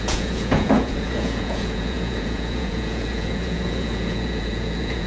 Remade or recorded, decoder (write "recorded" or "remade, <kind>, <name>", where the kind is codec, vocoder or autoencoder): remade, vocoder, Vocos